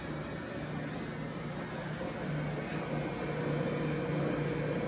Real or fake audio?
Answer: real